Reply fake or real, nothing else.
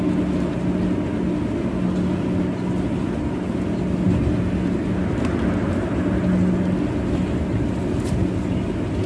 real